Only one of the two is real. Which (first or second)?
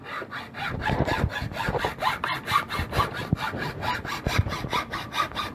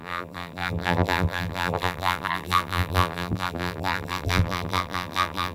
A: first